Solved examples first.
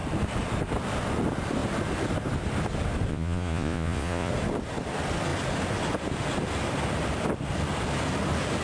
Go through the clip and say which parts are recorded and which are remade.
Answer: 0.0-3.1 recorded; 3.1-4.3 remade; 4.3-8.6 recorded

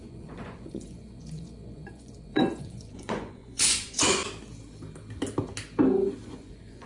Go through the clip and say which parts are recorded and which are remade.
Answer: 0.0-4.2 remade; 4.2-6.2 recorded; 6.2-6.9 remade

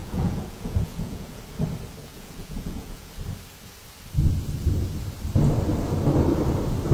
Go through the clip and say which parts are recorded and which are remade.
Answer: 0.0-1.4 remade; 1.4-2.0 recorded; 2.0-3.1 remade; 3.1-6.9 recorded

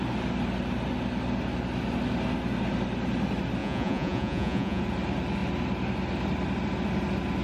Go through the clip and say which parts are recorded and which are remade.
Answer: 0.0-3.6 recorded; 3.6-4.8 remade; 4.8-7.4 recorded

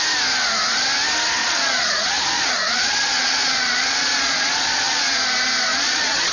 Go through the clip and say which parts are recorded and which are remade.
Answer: 0.0-1.4 recorded; 1.4-5.2 remade; 5.2-5.7 recorded; 5.7-6.3 remade